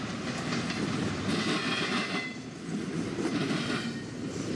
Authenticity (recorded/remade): recorded